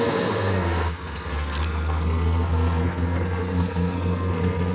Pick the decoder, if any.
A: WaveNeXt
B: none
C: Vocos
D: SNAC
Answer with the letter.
D